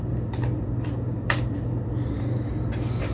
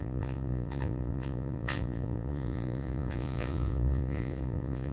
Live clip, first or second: first